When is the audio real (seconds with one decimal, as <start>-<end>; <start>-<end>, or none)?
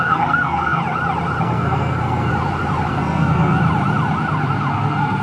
0.8-1.4; 2.3-2.9; 3.6-4.7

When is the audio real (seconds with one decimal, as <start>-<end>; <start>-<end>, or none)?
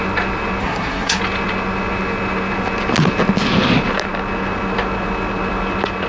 0.0-0.6; 1.2-6.1